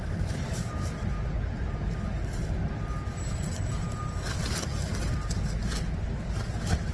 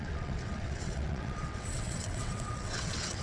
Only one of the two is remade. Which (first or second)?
second